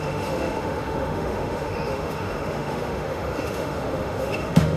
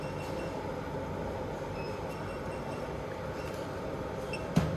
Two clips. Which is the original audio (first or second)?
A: second